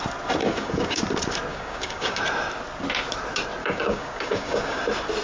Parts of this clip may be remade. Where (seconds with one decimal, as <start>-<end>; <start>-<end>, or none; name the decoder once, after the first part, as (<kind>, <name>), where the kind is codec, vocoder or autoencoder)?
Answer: 0.4-1.0 (codec, DAC); 1.5-2.2; 3.6-4.8